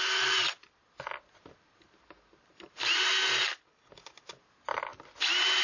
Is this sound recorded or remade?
recorded